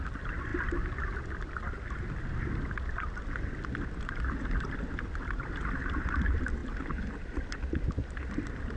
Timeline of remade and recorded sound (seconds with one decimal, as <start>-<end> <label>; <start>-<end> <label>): 0.0-8.8 recorded